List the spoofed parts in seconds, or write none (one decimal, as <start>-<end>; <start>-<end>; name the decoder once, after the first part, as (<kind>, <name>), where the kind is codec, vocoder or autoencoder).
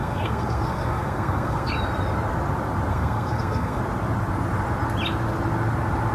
0.0-1.7 (codec, SNAC); 2.9-3.8